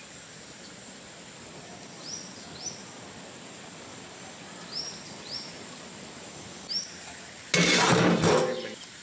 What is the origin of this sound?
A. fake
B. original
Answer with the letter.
B